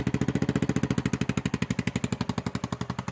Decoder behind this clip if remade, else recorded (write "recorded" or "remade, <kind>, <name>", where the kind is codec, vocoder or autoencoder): recorded